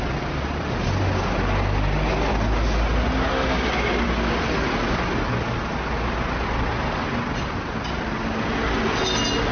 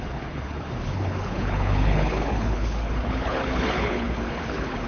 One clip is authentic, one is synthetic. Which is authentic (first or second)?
first